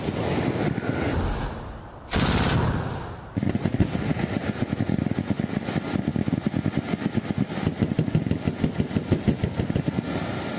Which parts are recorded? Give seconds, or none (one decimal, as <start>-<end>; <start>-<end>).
0.0-10.6